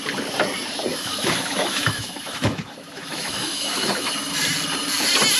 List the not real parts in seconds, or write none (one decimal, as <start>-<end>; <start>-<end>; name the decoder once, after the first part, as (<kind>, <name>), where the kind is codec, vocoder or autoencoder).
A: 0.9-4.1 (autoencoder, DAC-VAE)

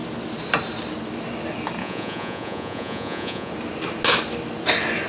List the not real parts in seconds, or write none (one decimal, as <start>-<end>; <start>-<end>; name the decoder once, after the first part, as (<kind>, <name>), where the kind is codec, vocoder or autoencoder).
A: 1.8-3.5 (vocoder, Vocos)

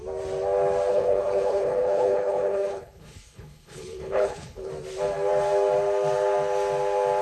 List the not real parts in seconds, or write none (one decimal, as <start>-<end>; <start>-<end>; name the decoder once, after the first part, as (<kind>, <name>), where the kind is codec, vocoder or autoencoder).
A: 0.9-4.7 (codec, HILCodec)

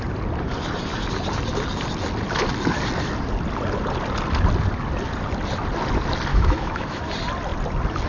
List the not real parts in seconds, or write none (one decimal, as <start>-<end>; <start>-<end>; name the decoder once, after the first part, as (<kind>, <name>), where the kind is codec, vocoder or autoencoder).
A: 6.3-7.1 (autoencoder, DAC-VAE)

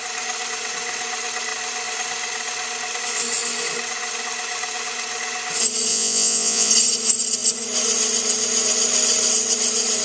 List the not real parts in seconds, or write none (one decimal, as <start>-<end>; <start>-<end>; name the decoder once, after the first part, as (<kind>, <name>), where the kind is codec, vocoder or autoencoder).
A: 5.9-6.7 (vocoder, Vocos)

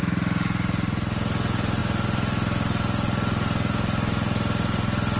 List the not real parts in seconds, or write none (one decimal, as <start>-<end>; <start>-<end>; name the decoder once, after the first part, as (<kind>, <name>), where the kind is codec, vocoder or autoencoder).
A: none

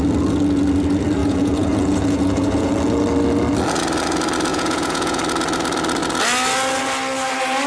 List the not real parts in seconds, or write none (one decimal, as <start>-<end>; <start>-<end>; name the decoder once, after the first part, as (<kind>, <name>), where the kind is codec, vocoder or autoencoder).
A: 1.2-2.7 (vocoder, Vocos); 4.5-5.2

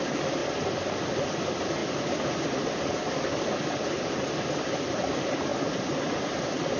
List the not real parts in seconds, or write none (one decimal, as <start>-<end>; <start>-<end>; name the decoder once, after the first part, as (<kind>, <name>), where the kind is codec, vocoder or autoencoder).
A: 0.0-0.4 (vocoder, BigVGAN v2); 1.1-1.8; 2.4-5.5; 6.2-6.8